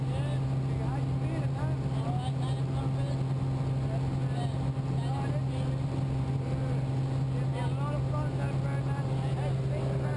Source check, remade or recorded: recorded